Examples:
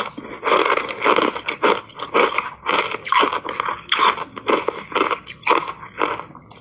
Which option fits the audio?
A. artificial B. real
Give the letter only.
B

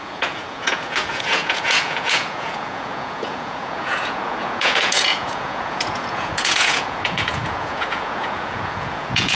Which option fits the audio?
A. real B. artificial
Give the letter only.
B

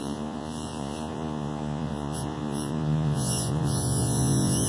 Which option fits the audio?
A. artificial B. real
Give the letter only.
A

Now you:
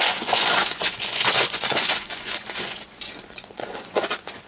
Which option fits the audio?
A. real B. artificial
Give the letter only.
B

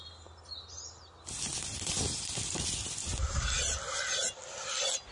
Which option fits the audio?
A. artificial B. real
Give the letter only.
B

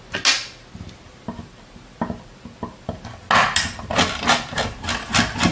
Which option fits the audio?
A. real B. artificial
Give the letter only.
A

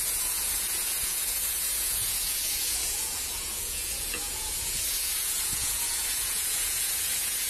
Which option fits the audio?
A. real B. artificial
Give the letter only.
B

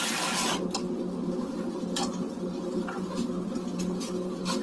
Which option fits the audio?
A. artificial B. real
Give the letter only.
B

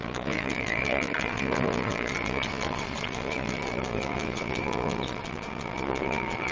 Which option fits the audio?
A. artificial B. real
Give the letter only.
A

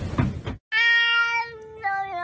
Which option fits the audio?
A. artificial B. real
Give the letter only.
B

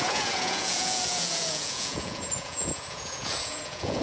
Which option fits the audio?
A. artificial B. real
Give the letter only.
A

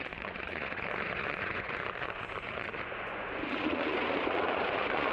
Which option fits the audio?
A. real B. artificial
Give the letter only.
B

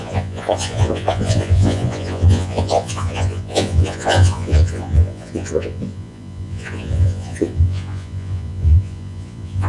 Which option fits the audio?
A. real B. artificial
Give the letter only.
B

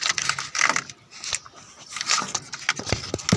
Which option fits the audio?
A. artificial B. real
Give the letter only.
B